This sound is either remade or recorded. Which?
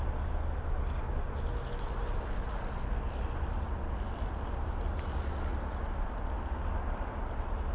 recorded